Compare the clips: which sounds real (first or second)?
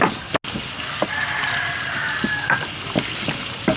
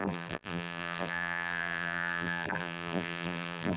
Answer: first